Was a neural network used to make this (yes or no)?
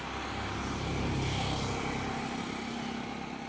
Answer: no